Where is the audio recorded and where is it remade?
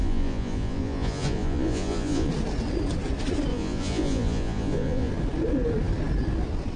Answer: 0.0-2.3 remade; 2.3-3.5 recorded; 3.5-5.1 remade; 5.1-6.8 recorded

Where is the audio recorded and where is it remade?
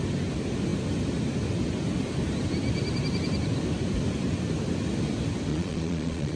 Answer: 0.0-5.5 recorded; 5.5-6.4 remade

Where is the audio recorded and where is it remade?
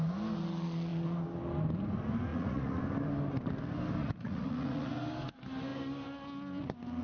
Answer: 0.0-2.3 recorded; 2.3-2.8 remade; 2.8-4.0 recorded; 4.0-4.9 remade; 4.9-7.0 recorded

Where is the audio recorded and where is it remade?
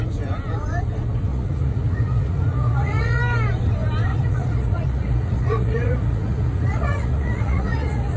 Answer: 0.0-1.3 recorded; 1.3-3.2 remade; 3.2-4.1 recorded; 4.1-8.2 remade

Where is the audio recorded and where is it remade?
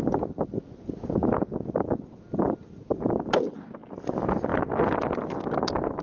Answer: 0.0-6.0 recorded